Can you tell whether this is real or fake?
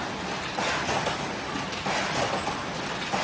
real